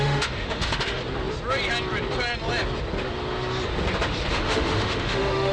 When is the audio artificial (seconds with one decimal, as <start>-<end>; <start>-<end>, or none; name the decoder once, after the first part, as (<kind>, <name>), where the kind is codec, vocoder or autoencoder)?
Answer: 0.0-1.0 (autoencoder, DAC-VAE); 4.3-5.5